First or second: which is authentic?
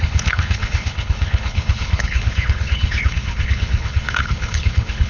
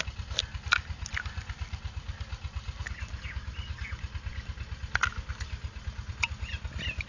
second